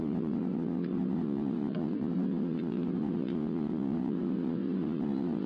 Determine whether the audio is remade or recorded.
remade